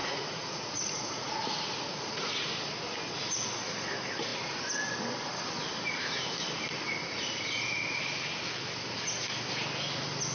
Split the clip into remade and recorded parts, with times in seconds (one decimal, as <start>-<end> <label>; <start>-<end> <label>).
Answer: 0.0-2.5 remade; 2.5-10.3 recorded